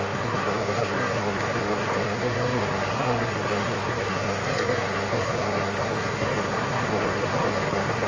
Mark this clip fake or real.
fake